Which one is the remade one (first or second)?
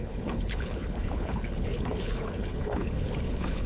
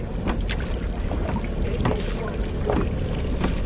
first